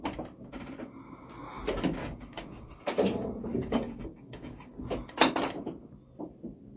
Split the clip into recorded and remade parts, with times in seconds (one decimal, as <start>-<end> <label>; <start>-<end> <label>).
0.0-2.0 recorded; 2.0-2.8 remade; 2.8-3.5 recorded; 3.5-4.7 remade; 4.7-6.8 recorded